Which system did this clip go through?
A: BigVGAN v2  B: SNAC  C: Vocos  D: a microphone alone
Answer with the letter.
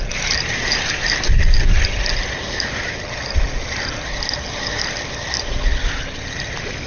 D